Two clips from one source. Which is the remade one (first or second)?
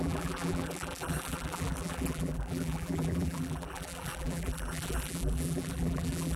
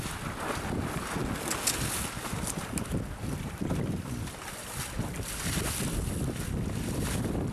first